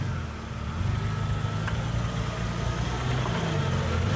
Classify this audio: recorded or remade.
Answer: recorded